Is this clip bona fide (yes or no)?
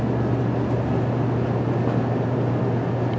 yes